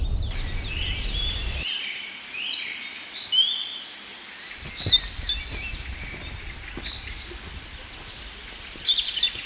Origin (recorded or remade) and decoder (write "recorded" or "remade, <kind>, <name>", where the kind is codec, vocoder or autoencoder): recorded